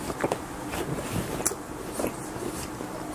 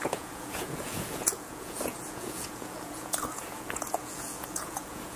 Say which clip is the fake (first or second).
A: second